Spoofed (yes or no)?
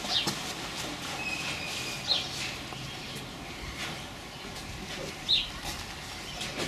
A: no